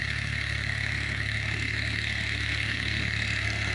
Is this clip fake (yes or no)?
yes